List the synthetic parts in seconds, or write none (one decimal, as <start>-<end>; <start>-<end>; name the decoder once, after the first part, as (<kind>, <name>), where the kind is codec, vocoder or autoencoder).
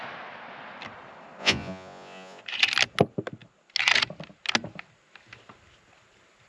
1.4-2.4 (vocoder, Vocos)